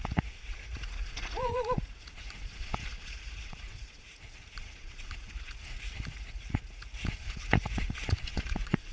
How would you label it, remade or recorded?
remade